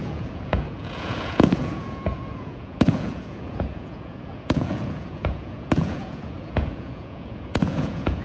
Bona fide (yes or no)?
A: no